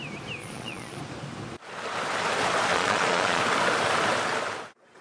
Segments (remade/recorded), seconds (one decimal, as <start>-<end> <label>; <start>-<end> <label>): 0.0-0.4 recorded; 0.4-1.0 remade; 1.0-2.7 recorded; 2.7-3.4 remade; 3.4-5.0 recorded